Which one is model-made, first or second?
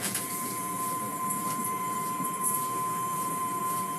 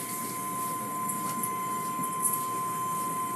first